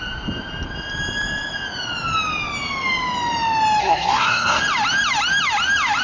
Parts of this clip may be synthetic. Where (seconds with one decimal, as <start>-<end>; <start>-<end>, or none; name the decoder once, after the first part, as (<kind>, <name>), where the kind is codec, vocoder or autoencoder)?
3.8-4.6 (codec, SNAC)